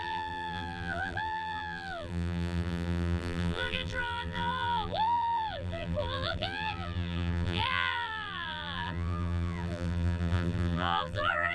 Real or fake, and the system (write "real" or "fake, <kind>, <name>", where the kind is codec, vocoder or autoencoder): fake, vocoder, BigVGAN v2